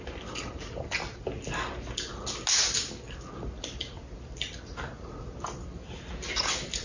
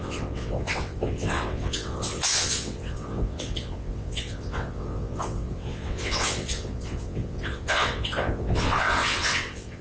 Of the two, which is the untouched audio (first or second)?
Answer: first